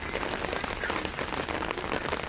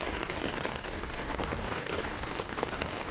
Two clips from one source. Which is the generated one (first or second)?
second